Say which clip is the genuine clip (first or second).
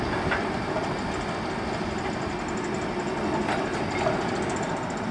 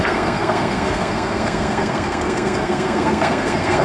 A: first